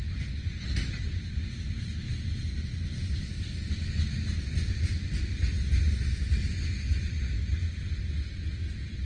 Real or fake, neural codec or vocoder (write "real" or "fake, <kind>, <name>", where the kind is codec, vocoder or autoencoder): real